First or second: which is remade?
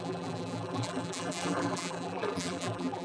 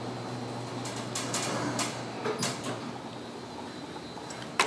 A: first